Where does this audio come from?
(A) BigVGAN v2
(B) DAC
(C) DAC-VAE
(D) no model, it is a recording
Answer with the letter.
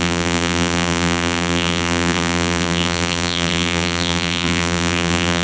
A